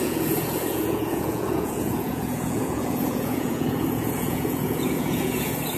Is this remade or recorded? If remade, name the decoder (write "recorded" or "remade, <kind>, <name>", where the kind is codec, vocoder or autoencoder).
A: remade, vocoder, Vocos